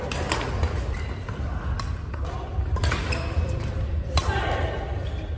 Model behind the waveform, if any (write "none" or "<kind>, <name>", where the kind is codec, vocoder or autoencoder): none